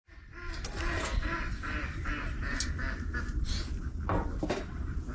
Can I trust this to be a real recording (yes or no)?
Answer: yes